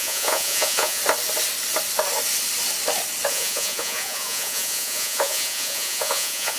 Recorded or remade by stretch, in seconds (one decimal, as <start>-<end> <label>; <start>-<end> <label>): 0.0-1.0 remade; 1.0-3.3 recorded; 3.3-6.6 remade